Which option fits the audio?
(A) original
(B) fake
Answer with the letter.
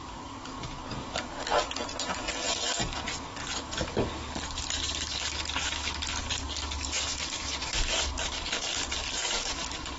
B